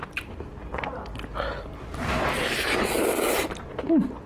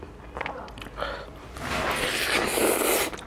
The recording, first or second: second